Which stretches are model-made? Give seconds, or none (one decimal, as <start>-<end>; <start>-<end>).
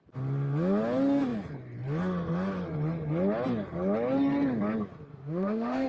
5.1-5.9